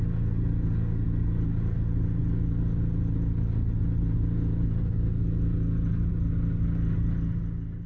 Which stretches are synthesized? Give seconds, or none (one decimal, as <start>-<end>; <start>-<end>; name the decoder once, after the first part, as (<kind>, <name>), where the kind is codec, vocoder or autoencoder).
none